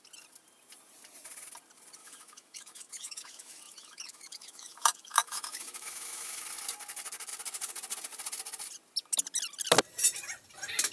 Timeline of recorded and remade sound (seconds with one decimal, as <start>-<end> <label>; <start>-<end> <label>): 0.0-2.0 recorded; 2.0-6.4 remade; 6.4-10.9 recorded